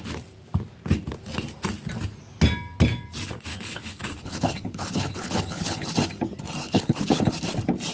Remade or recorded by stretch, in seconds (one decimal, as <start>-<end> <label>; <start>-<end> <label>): 0.0-3.5 recorded; 3.5-5.9 remade; 5.9-6.6 recorded; 6.6-7.3 remade; 7.3-7.9 recorded

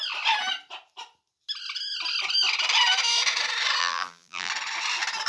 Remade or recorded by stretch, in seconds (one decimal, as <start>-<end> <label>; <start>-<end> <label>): 0.0-3.8 recorded; 3.8-4.5 remade; 4.5-5.3 recorded

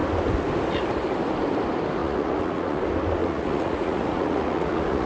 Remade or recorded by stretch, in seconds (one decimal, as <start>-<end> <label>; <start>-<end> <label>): 0.0-2.0 recorded; 2.0-2.8 remade; 2.8-3.2 recorded; 3.2-5.1 remade

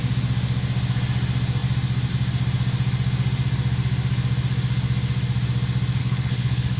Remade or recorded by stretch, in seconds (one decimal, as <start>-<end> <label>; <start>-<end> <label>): 0.0-6.0 recorded; 6.0-6.8 remade

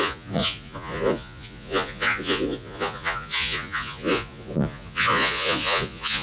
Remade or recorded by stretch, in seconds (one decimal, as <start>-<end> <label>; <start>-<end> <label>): 0.0-6.2 remade

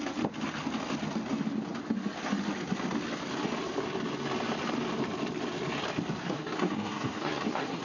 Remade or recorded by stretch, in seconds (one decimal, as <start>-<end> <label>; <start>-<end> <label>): 0.0-6.2 recorded; 6.2-7.8 remade

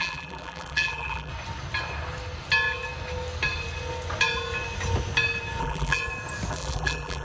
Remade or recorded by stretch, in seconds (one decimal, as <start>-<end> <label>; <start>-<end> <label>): 0.0-1.3 remade; 1.3-5.6 recorded; 5.6-6.0 remade; 6.0-6.5 recorded; 6.5-7.2 remade